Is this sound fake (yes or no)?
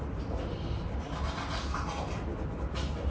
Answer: no